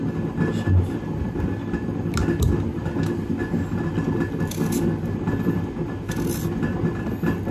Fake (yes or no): no